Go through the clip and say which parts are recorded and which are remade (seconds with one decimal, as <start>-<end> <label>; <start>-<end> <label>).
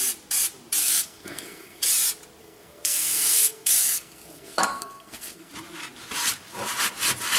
0.0-0.8 recorded; 0.8-1.8 remade; 1.8-2.4 recorded; 2.4-5.5 remade; 5.5-7.4 recorded